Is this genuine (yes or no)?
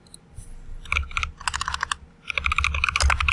yes